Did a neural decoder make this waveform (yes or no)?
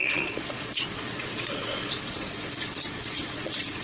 yes